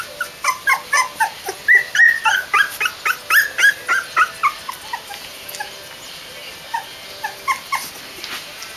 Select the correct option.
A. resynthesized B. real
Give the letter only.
B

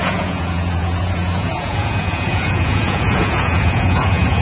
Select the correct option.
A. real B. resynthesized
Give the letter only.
B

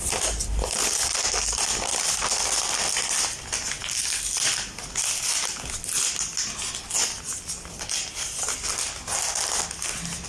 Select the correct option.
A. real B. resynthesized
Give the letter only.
A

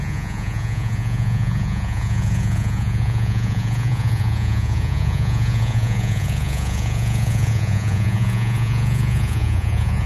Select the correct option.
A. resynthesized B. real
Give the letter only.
A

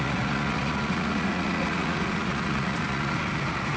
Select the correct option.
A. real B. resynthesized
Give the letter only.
B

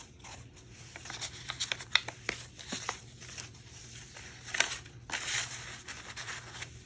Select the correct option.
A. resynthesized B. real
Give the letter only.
B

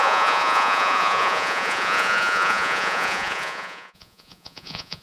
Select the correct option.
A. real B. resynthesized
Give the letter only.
B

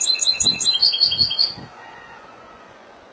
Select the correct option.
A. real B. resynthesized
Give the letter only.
B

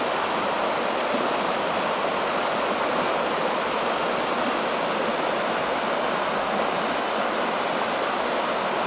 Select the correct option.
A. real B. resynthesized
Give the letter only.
A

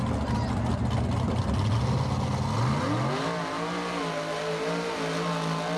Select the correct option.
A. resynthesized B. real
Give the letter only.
B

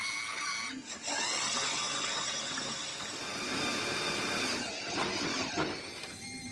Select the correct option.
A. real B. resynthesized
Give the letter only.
A